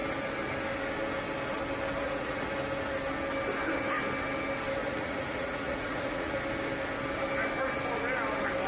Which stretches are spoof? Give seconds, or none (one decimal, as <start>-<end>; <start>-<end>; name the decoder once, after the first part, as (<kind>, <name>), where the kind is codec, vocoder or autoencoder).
2.0-2.5 (vocoder, Vocos); 4.8-6.4